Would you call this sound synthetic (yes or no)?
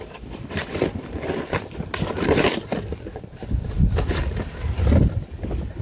no